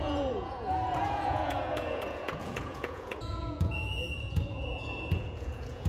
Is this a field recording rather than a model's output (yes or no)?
no